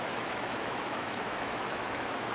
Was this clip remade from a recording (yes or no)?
yes